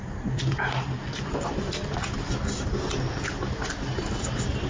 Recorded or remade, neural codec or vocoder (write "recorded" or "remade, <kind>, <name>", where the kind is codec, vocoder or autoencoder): recorded